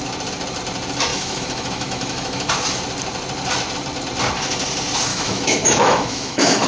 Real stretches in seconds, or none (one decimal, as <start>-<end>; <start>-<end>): 0.0-1.1; 2.5-5.1